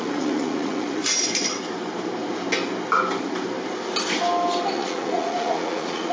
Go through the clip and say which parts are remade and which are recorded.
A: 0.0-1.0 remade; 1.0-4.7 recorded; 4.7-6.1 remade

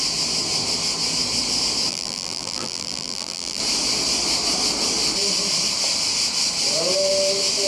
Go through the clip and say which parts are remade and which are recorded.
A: 0.0-1.9 recorded; 1.9-3.6 remade; 3.6-7.7 recorded

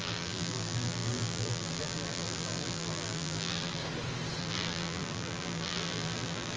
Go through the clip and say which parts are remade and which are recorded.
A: 0.0-3.8 remade; 3.8-4.4 recorded; 4.4-6.6 remade

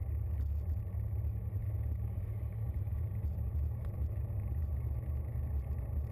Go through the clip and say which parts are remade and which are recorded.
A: 0.0-2.5 recorded; 2.5-4.7 remade; 4.7-6.1 recorded